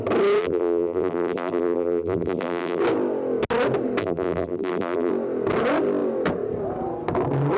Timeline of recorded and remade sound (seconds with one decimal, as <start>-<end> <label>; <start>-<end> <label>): 0.0-0.4 recorded; 0.4-2.8 remade; 2.8-4.0 recorded; 4.0-5.1 remade; 5.1-7.6 recorded